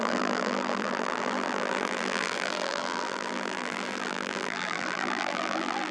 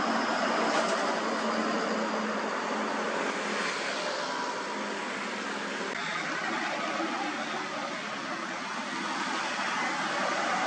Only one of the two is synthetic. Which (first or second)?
first